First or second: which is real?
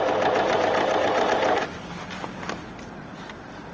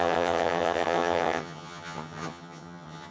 first